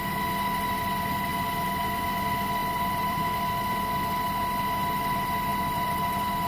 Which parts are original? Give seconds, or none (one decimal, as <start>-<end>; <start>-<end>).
0.0-2.6; 3.2-5.5; 6.0-6.5